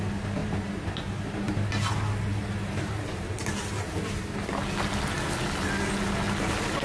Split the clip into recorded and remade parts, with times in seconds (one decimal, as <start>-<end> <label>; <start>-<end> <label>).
0.0-0.4 recorded; 0.4-1.3 remade; 1.3-2.3 recorded; 2.3-3.6 remade; 3.6-6.8 recorded